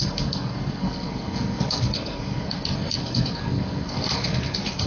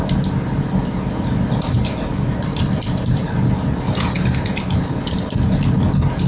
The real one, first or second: second